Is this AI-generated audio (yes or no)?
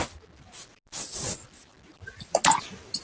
no